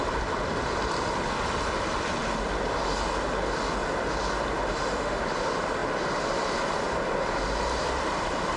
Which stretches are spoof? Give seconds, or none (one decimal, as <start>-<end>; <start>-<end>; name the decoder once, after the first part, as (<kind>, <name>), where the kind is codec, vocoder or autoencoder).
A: 4.7-5.2 (autoencoder, DAC-VAE)